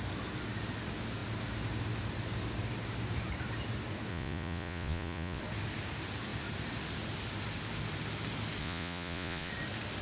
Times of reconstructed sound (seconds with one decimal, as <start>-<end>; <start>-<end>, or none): 4.1-5.4; 8.6-9.5